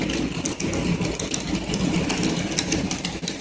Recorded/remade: recorded